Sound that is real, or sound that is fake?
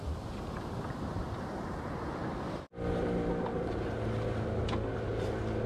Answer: real